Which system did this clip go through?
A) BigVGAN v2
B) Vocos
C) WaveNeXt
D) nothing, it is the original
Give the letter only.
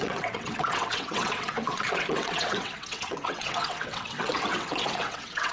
C